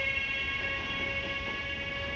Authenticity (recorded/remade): recorded